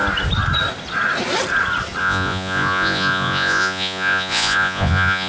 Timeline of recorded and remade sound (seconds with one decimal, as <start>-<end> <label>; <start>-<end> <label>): 0.0-2.0 recorded; 2.0-5.3 remade